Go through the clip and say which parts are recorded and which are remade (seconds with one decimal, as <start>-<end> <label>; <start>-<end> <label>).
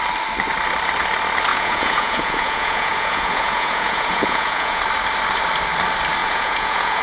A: 0.0-1.5 recorded; 1.5-4.8 remade; 4.8-6.2 recorded; 6.2-7.0 remade